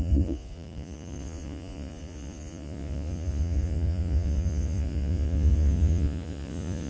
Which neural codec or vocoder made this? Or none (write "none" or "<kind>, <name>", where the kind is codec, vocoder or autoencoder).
vocoder, Vocos